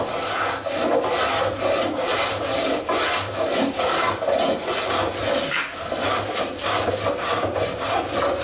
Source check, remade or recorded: recorded